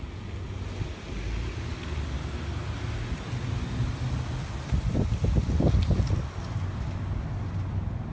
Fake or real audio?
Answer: real